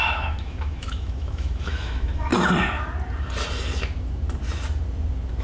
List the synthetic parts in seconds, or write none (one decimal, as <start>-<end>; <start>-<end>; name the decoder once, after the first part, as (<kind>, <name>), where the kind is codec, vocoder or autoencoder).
0.0-2.3 (autoencoder, DAC-VAE)